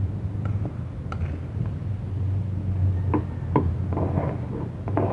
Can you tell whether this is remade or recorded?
recorded